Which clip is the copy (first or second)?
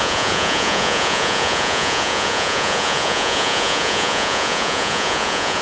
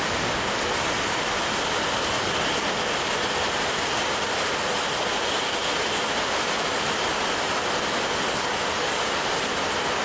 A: first